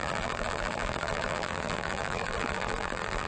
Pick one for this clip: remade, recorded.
remade